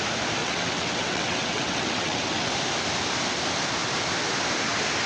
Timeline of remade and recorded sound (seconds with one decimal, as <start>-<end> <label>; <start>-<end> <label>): 0.0-0.4 recorded; 0.4-2.5 remade; 2.5-5.1 recorded